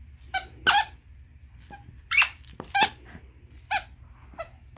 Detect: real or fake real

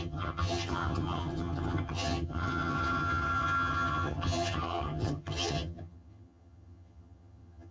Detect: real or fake fake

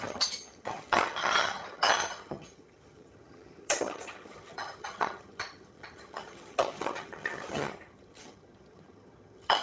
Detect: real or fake fake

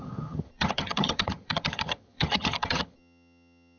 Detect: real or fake fake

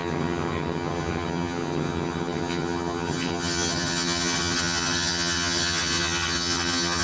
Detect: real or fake fake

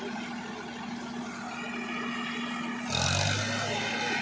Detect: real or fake real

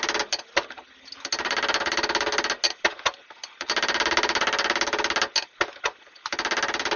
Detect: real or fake real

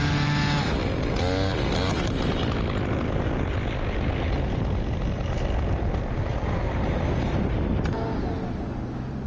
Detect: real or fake real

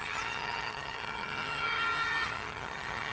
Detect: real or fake fake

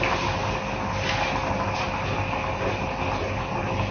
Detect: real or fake real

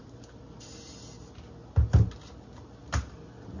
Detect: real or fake real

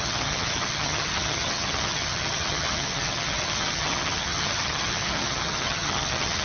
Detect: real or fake fake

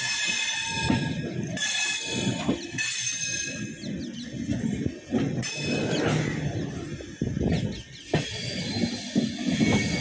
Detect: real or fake real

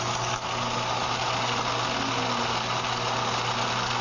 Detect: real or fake real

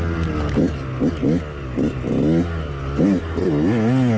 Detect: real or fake real